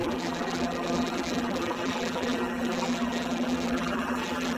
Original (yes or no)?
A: no